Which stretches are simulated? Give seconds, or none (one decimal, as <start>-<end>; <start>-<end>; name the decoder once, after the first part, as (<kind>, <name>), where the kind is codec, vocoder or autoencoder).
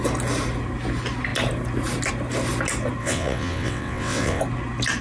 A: 3.0-4.4 (vocoder, WaveNeXt)